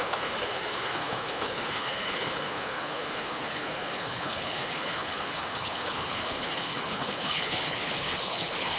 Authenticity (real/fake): fake